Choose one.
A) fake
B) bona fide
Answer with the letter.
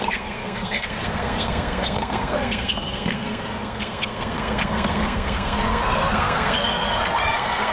A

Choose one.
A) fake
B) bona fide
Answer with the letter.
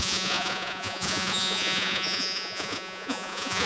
A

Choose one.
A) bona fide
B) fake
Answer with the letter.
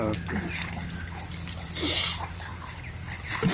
A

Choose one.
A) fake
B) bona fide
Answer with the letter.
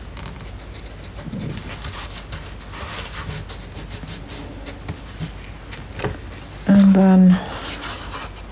B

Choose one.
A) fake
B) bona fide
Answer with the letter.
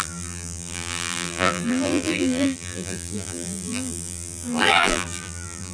A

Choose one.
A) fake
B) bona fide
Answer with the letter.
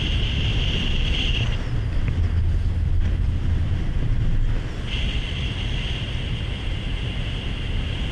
B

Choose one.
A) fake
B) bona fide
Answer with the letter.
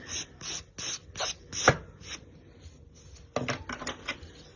B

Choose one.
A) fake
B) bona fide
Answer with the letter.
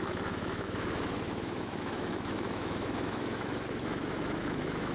A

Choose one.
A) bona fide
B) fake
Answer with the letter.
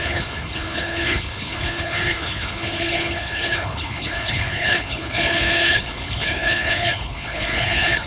B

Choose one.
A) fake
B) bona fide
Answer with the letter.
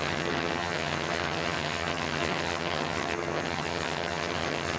A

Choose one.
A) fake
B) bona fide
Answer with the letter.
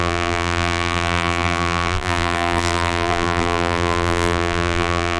A